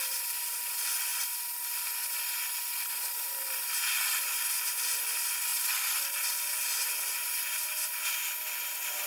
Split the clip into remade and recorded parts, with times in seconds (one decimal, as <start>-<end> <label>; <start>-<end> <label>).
0.0-9.1 recorded

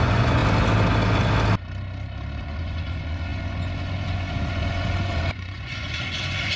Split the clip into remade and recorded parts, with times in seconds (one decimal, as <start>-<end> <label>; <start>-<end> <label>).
0.0-0.4 remade; 0.4-2.4 recorded; 2.4-6.6 remade

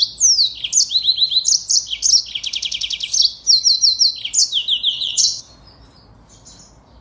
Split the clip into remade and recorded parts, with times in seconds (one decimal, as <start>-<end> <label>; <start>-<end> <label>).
0.0-4.9 recorded; 4.9-5.4 remade; 5.4-7.0 recorded

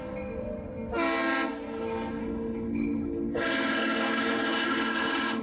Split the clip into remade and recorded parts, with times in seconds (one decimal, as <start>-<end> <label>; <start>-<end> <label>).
0.0-2.2 recorded; 2.2-5.4 remade

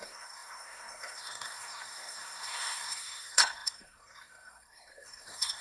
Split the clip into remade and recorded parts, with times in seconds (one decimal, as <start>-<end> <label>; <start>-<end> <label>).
0.0-5.6 remade

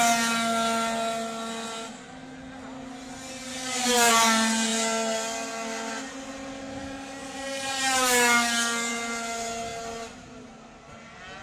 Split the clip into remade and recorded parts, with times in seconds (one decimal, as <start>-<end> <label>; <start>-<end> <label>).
0.0-3.5 recorded; 3.5-4.1 remade; 4.1-6.8 recorded; 6.8-8.9 remade; 8.9-11.4 recorded

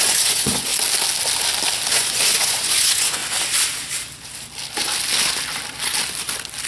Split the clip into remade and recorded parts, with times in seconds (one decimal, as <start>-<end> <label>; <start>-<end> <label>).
0.0-0.7 remade; 0.7-1.9 recorded; 1.9-3.2 remade; 3.2-6.7 recorded